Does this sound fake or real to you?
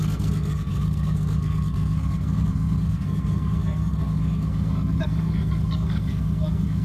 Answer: fake